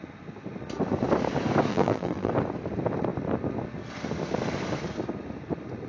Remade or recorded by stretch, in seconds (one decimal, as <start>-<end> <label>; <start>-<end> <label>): 0.0-1.7 recorded; 1.7-2.3 remade; 2.3-5.9 recorded